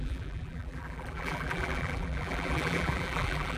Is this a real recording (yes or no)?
no